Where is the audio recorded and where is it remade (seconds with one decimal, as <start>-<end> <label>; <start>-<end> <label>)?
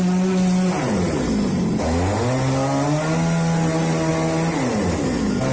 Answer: 0.0-5.5 recorded